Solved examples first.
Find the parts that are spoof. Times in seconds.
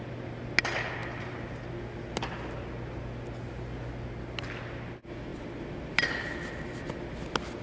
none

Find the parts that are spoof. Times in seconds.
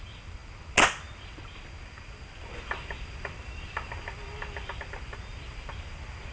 none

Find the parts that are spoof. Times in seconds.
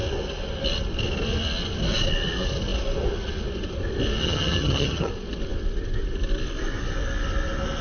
4.2-5.1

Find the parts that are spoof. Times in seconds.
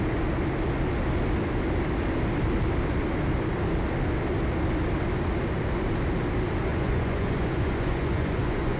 6.7-8.8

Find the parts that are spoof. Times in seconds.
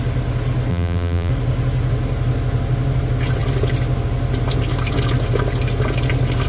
0.7-1.3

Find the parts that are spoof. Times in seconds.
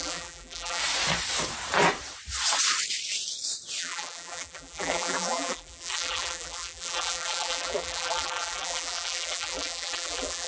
0.0-0.8; 3.8-10.5